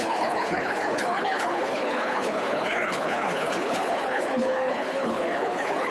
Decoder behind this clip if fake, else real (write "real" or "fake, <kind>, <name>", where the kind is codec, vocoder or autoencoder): fake, codec, HILCodec